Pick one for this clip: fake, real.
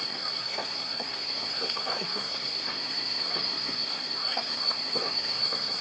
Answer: fake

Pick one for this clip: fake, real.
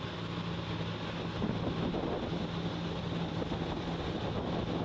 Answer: real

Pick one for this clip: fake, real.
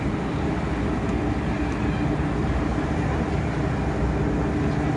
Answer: real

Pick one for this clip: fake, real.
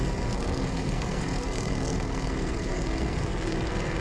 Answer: fake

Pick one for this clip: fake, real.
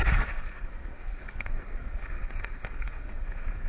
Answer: fake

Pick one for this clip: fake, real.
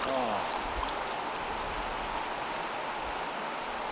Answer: real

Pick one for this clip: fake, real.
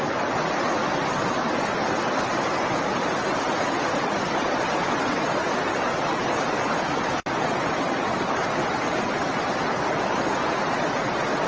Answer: real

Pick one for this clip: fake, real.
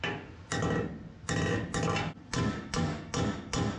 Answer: real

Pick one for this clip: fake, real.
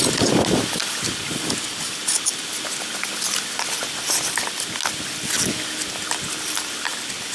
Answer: real